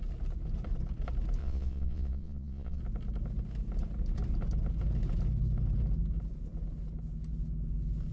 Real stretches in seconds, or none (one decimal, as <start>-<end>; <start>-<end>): 0.0-1.4; 2.8-8.1